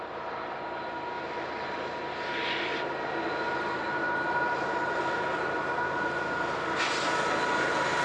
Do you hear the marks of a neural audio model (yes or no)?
no